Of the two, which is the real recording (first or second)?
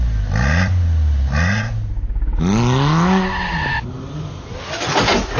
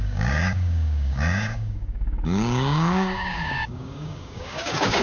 first